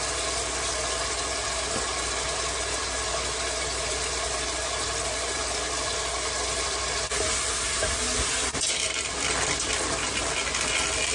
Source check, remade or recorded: recorded